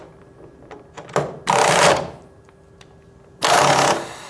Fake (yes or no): no